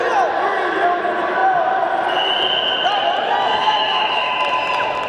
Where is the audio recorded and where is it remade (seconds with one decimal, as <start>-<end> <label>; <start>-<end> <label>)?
0.0-3.6 recorded; 3.6-4.3 remade; 4.3-5.1 recorded